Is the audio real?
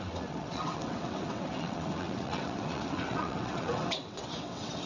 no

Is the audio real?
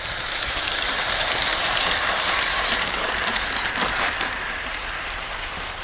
no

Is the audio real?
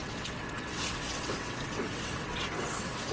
no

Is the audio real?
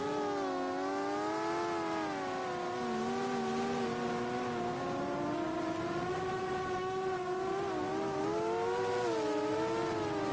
yes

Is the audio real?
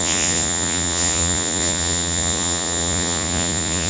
no